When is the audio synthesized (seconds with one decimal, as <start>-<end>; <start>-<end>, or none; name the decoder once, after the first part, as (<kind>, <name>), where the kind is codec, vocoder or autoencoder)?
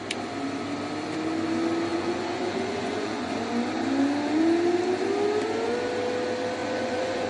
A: 1.9-3.3 (vocoder, Vocos); 6.6-7.3